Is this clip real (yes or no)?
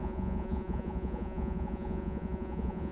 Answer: no